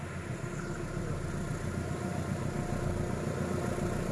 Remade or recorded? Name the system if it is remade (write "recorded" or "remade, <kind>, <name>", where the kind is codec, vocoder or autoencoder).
recorded